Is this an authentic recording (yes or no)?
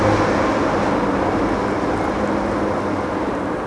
yes